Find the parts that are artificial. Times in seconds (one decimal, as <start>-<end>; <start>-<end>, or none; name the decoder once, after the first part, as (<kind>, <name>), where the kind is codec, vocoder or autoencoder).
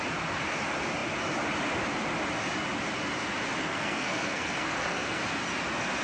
3.6-5.2 (codec, SNAC)